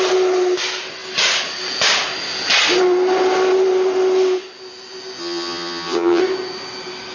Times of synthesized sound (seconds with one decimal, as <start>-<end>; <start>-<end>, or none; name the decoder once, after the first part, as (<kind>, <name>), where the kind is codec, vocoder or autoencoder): 5.2-6.2 (vocoder, HiFi-GAN)